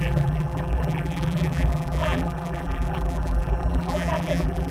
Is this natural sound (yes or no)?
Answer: no